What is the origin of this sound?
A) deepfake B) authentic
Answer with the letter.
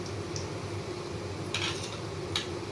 B